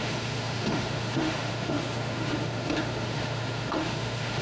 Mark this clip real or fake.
fake